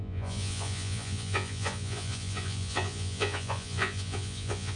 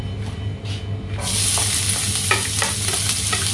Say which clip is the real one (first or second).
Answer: second